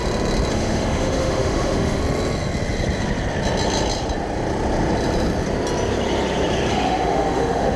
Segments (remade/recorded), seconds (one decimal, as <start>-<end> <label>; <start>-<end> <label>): 0.0-0.5 recorded; 0.5-2.0 remade; 2.0-6.7 recorded; 6.7-7.8 remade